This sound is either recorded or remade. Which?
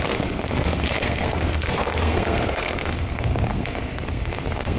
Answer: remade